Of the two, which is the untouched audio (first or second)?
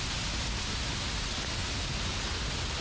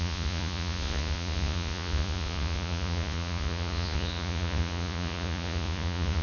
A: first